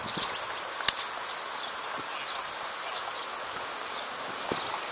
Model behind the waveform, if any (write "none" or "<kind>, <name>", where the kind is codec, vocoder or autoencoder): none